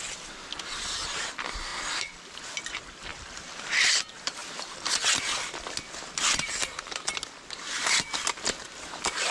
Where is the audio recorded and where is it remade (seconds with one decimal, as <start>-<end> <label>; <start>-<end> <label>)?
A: 0.0-3.1 recorded; 3.1-3.9 remade; 3.9-4.4 recorded; 4.4-4.9 remade; 4.9-9.3 recorded